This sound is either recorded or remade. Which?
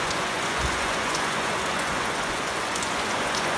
remade